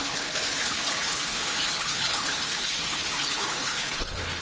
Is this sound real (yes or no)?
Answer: no